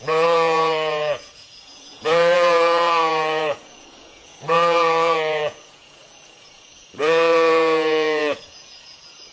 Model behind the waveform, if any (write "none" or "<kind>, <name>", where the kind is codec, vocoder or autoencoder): vocoder, Vocos